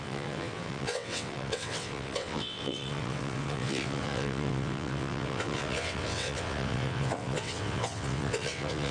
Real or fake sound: fake